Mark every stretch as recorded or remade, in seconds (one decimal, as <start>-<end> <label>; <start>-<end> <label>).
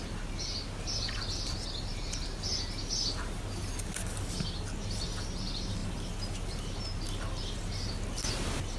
0.0-8.8 recorded